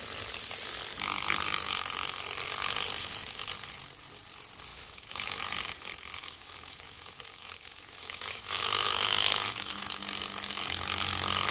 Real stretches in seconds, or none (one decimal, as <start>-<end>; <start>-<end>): 0.0-4.7; 5.4-6.2; 9.9-11.5